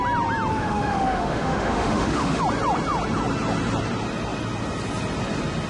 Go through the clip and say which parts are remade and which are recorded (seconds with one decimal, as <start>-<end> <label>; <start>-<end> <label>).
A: 0.0-0.5 recorded; 0.5-2.4 remade; 2.4-5.7 recorded